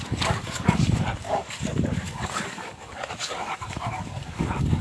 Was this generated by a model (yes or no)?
yes